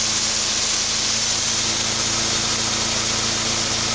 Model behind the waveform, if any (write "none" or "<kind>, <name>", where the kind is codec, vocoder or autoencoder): none